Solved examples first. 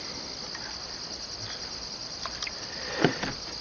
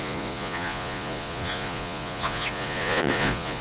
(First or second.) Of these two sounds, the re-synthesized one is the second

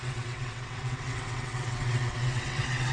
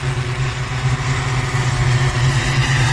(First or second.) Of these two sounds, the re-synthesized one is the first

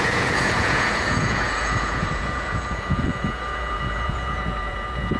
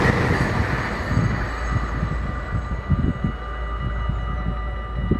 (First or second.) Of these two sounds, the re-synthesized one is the first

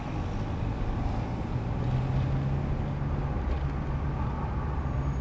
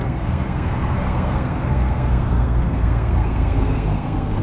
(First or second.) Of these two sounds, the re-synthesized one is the second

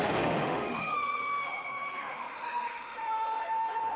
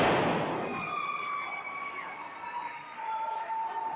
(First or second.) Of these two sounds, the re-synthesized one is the first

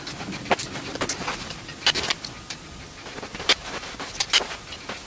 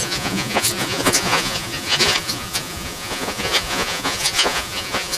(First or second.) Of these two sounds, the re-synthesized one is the second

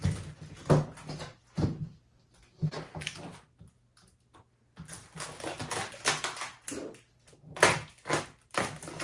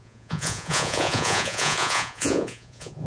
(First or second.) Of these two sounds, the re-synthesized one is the second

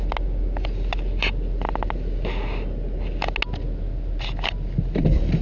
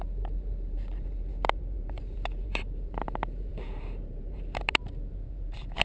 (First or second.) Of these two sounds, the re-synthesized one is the second